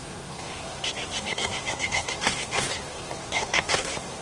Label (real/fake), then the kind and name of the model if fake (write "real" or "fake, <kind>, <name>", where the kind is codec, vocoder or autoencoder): fake, codec, SNAC